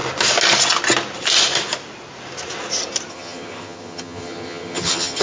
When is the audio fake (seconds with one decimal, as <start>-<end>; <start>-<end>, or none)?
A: 3.1-5.2

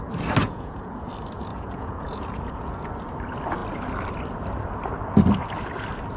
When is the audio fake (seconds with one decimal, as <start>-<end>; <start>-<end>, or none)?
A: 0.4-1.1; 1.5-2.9

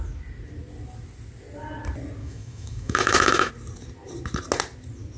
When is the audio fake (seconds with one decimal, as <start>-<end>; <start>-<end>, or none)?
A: 2.2-3.5

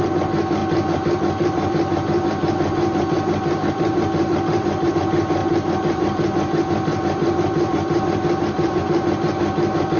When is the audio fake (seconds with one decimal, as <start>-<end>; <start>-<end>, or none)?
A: 0.6-4.9; 5.4-8.8

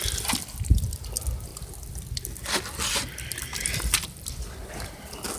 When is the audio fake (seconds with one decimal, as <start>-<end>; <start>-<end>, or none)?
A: 1.5-4.7

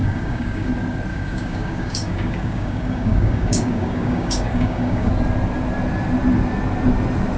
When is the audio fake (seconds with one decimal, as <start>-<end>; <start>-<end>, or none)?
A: 0.0-0.7; 1.1-5.1